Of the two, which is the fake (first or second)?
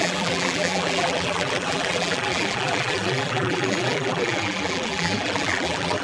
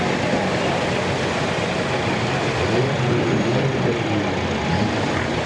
first